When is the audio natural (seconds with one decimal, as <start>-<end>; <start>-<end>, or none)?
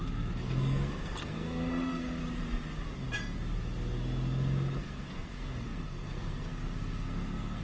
2.2-4.8